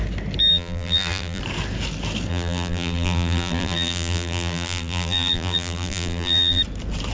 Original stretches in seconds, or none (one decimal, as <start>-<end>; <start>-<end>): 0.0-0.5; 1.4-2.3; 6.6-7.1